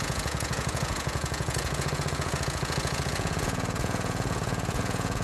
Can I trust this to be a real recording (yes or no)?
no